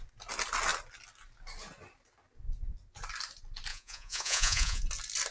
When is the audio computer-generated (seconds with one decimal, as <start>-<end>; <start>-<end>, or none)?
3.7-4.8